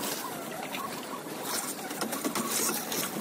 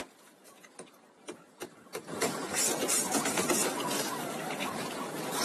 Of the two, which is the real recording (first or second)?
first